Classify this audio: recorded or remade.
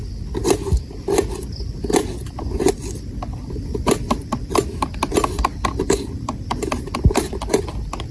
recorded